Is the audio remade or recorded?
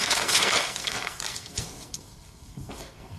remade